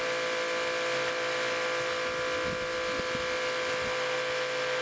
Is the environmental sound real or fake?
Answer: real